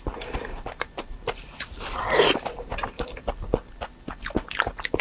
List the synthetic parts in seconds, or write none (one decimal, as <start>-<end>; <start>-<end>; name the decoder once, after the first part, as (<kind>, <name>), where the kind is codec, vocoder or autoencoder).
0.5-2.0 (vocoder, BigVGAN v2)